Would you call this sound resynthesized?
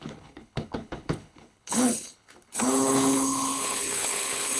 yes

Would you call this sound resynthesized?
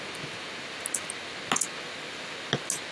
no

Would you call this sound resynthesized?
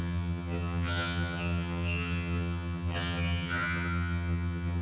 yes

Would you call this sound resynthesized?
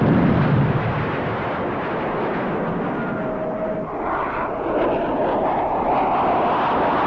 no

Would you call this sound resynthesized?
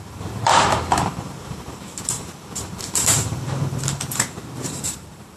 yes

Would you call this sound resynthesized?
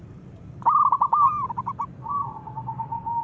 no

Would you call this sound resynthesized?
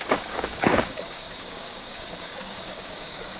yes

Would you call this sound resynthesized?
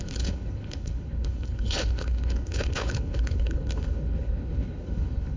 yes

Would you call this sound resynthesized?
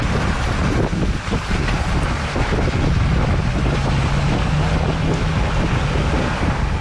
no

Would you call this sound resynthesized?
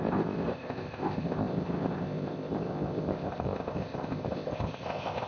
yes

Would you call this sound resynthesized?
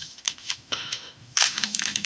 yes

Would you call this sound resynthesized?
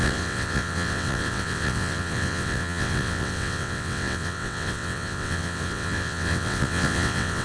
yes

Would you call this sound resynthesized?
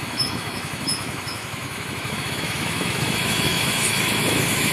yes